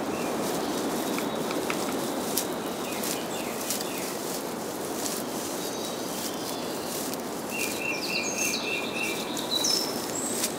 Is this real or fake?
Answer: fake